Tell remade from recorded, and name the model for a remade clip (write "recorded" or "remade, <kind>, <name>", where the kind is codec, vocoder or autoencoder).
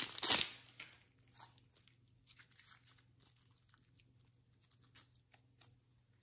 recorded